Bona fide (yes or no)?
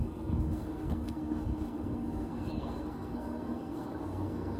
no